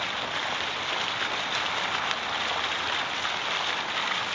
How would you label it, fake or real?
real